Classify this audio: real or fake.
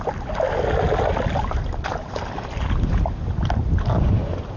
real